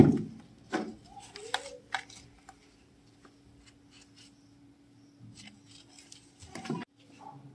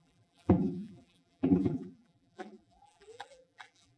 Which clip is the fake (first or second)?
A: second